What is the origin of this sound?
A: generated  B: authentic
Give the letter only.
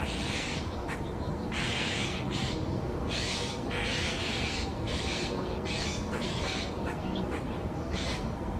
A